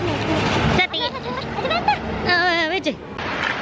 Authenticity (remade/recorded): recorded